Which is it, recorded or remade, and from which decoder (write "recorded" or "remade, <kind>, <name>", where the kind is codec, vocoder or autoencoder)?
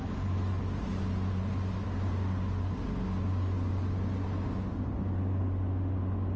recorded